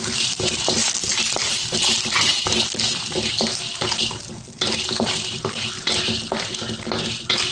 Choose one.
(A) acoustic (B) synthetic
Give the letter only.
A